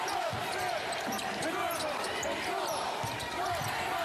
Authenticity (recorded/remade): recorded